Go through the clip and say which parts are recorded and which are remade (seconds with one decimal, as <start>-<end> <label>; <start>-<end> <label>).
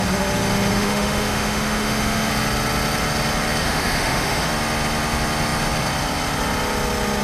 0.0-0.7 recorded; 0.7-2.3 remade; 2.3-3.6 recorded; 3.6-4.5 remade; 4.5-7.2 recorded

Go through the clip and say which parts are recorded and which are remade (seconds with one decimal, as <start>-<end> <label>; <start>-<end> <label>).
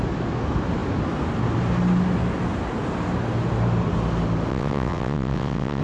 0.0-4.5 recorded; 4.5-5.8 remade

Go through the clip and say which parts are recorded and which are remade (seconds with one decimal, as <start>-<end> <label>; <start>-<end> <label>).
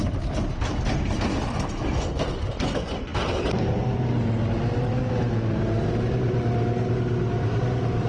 0.0-8.1 recorded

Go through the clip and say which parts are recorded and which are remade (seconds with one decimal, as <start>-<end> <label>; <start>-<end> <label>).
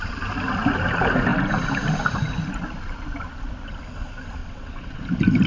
0.0-4.4 recorded; 4.4-5.0 remade; 5.0-5.5 recorded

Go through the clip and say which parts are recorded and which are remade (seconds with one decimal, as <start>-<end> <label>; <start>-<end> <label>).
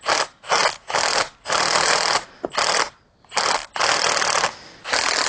0.0-5.3 recorded